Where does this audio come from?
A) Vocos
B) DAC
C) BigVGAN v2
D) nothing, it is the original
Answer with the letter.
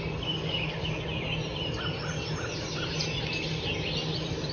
D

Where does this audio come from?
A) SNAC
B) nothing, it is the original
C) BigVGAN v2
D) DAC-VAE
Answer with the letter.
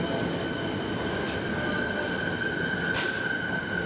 B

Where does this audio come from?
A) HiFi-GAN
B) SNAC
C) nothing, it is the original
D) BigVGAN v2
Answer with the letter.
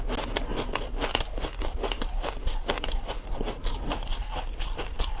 C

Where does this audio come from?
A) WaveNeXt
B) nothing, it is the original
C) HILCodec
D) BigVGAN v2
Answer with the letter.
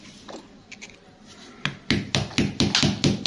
B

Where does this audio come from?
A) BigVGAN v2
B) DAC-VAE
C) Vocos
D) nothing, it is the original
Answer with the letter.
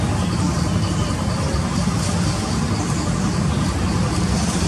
D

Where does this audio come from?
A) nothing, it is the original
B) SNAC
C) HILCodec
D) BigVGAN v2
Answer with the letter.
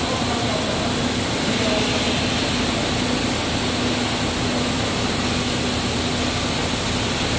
A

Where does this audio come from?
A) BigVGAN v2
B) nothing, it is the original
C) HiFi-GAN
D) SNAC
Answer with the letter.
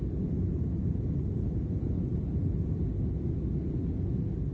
B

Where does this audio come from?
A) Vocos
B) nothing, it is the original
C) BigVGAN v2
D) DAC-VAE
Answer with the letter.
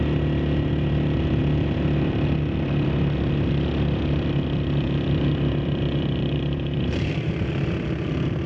C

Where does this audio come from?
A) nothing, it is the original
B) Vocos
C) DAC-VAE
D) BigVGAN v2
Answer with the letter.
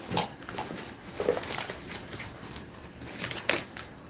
D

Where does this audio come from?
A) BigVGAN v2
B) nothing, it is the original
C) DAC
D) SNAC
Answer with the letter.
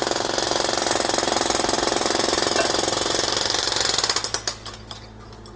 B